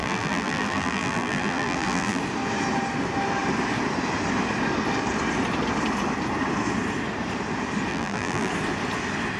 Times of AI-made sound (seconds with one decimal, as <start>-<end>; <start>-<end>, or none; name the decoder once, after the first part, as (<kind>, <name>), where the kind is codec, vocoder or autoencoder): 0.0-2.2 (vocoder, BigVGAN v2); 7.9-8.5